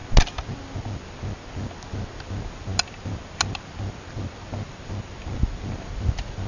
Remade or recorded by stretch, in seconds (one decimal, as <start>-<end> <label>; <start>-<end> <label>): 0.0-6.5 recorded